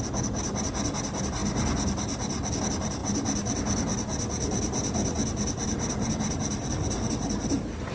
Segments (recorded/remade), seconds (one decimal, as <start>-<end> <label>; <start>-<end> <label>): 0.0-7.9 recorded